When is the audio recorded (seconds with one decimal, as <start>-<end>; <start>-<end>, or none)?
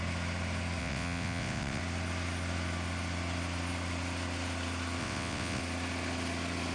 0.0-0.8; 1.8-5.0; 5.6-6.7